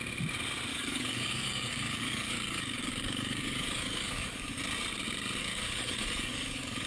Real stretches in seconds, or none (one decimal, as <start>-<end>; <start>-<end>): 0.0-0.7; 4.6-5.4